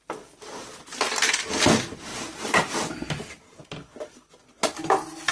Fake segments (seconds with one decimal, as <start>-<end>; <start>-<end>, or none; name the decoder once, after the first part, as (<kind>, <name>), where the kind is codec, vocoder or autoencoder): 0.9-1.5 (vocoder, BigVGAN v2); 2.1-3.6